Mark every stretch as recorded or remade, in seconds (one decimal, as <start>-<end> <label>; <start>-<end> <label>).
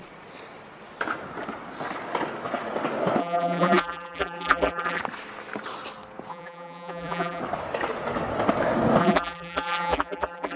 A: 0.0-3.2 recorded; 3.2-5.0 remade; 5.0-6.3 recorded; 6.3-7.4 remade; 7.4-9.0 recorded; 9.0-10.6 remade